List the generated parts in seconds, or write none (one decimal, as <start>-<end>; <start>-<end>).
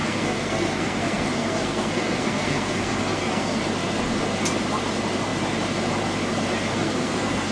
0.0-3.6; 6.7-7.5